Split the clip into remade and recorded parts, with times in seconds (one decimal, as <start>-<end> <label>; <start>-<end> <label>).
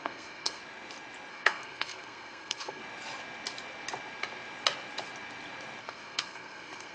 0.0-0.6 remade; 0.6-1.3 recorded; 1.3-2.8 remade; 2.8-5.8 recorded; 5.8-6.9 remade